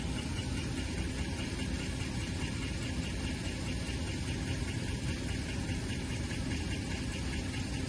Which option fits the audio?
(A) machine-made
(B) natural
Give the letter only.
B